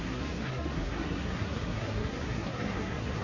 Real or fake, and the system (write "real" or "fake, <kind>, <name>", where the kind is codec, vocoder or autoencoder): fake, codec, SNAC